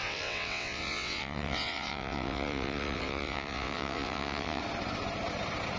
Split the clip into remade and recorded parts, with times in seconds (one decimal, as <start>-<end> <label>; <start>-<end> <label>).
0.0-4.6 remade; 4.6-5.8 recorded